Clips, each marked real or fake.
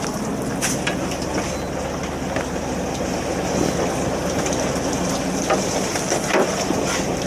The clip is real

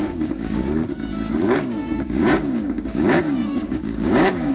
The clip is fake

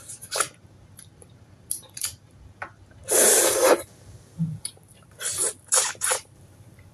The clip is fake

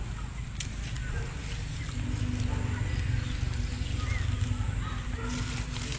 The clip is real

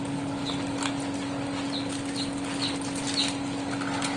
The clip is real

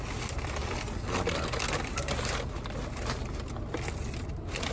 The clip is real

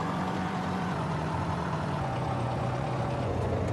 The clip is fake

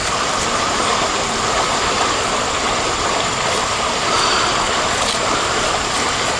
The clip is real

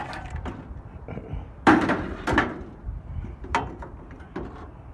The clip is real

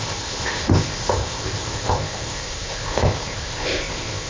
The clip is fake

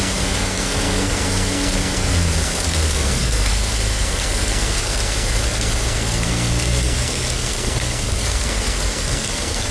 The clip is fake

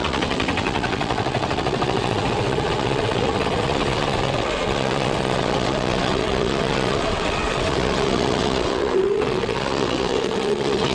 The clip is fake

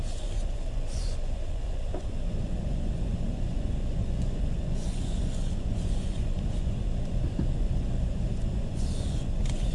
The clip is fake